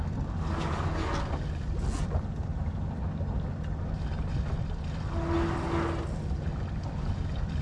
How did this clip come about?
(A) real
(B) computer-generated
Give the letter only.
A